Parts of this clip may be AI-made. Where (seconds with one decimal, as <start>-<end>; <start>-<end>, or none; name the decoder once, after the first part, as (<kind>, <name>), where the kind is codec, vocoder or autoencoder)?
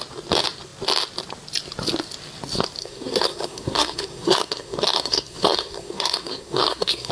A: 2.8-7.1 (codec, SNAC)